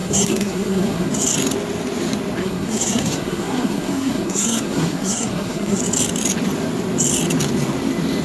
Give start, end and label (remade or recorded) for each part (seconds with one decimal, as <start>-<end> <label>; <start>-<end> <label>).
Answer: 0.0-1.1 remade; 1.1-2.4 recorded; 2.4-5.8 remade; 5.8-8.2 recorded